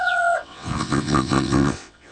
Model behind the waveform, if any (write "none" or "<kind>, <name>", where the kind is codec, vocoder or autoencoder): vocoder, WaveNeXt